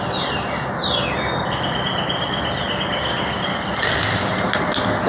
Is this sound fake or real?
real